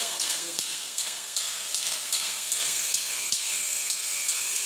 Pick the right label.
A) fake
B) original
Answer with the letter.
A